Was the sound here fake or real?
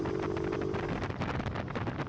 real